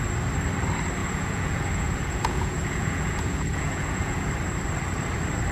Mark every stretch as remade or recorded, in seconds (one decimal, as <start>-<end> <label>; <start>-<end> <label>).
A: 0.0-1.0 recorded; 1.0-4.3 remade; 4.3-5.5 recorded